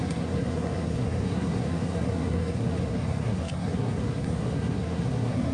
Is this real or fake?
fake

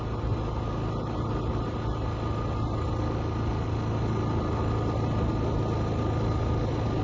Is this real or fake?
real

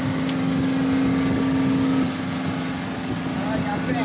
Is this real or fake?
real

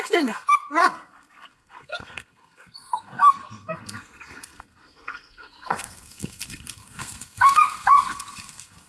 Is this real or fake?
fake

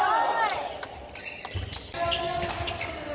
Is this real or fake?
real